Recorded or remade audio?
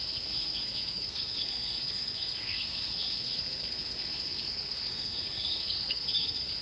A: remade